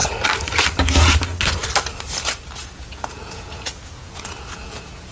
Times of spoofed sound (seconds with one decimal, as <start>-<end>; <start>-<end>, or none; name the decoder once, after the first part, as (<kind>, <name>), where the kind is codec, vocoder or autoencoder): 2.6-5.1 (vocoder, Vocos)